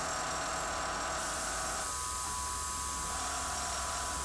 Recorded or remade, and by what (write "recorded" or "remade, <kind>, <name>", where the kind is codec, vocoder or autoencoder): recorded